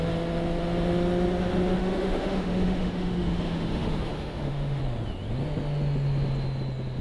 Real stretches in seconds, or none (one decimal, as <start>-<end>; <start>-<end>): 0.0-1.8; 4.8-7.0